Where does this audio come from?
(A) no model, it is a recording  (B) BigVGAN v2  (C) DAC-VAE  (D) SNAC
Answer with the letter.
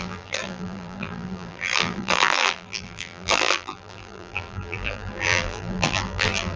B